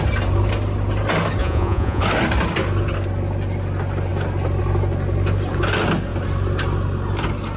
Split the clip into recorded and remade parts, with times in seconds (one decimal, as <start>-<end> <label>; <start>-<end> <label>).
0.0-1.4 recorded; 1.4-2.0 remade; 2.0-7.6 recorded